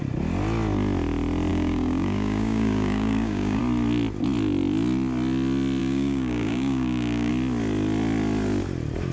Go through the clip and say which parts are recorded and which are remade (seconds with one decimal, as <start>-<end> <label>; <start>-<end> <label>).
0.0-1.5 recorded; 1.5-3.6 remade; 3.6-5.8 recorded; 5.8-7.3 remade; 7.3-9.1 recorded